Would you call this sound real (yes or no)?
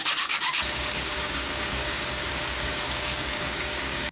no